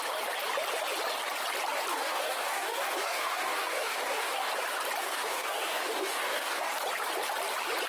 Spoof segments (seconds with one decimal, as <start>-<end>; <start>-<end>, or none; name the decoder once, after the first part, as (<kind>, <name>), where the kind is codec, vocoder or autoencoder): 1.9-4.5 (codec, DAC); 5.0-6.7